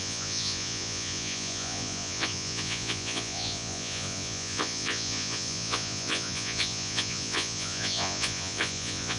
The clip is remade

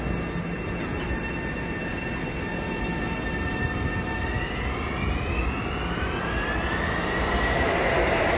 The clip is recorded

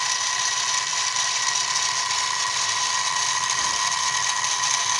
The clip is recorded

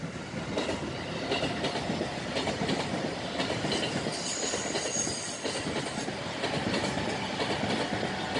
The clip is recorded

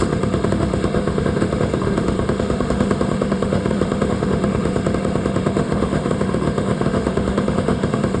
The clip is remade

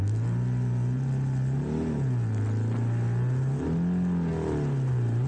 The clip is recorded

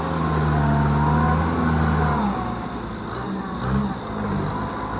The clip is recorded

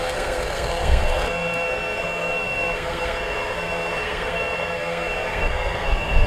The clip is remade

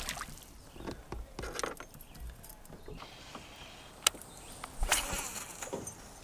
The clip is recorded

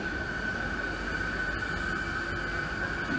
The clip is recorded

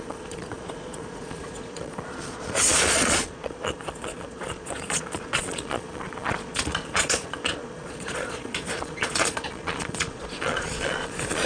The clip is remade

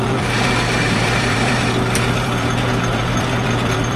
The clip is remade